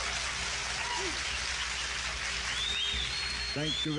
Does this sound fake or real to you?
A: real